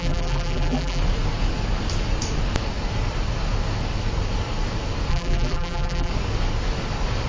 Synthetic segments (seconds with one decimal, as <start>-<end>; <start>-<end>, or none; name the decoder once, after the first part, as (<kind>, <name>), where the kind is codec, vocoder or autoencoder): 0.0-1.0 (vocoder, BigVGAN v2); 5.1-6.1